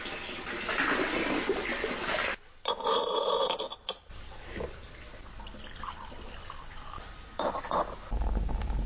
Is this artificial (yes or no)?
no